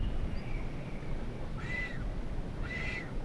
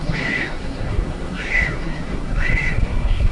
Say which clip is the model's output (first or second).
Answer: second